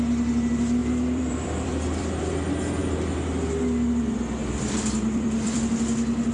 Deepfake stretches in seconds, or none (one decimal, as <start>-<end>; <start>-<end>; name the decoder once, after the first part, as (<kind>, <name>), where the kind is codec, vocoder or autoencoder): 0.8-2.2 (vocoder, BigVGAN v2); 4.4-5.6